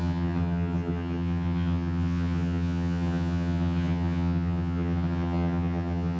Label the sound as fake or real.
fake